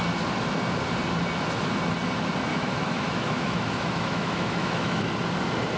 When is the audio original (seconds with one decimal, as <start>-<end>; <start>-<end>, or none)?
0.0-2.5; 5.1-5.8